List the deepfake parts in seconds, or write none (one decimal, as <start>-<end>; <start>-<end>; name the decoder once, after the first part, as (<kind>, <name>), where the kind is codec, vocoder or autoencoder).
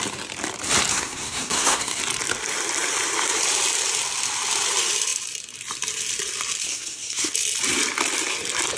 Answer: 0.9-2.0 (codec, SNAC); 6.6-7.3